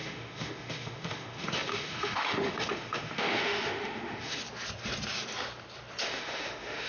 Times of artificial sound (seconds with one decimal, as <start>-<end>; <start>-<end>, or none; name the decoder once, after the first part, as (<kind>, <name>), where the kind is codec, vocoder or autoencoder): 0.0-4.4 (autoencoder, DAC-VAE); 6.0-6.9

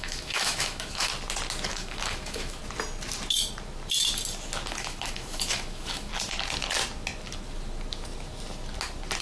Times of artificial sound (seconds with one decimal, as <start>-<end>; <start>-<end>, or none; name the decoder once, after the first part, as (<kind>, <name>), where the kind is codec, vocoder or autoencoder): 0.0-1.1 (autoencoder, DAC-VAE); 1.7-2.6; 4.7-6.1